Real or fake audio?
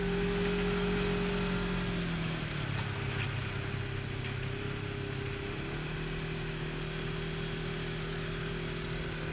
real